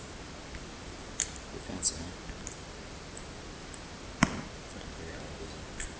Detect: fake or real fake